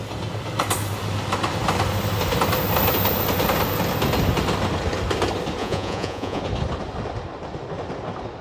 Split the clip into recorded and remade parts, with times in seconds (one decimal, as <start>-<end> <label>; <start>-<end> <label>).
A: 0.0-5.6 recorded; 5.6-6.4 remade; 6.4-8.4 recorded